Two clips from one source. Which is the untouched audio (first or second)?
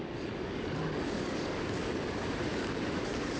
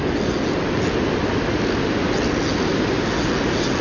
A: second